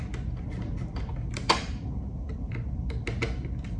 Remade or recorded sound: recorded